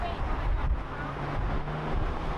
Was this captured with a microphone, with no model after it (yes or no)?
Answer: yes